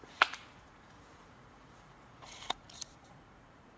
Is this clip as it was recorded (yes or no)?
no